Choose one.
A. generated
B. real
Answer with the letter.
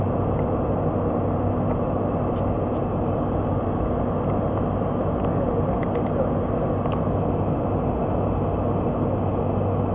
B